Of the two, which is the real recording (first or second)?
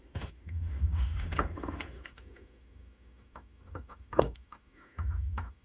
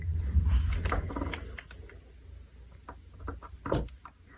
second